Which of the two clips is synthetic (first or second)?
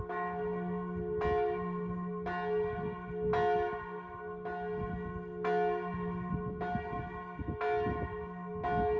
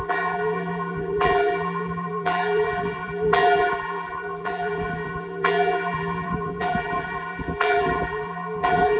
second